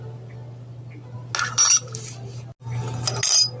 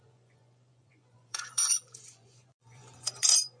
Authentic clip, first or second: first